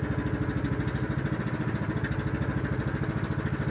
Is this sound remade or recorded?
recorded